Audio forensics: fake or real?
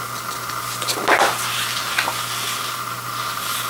real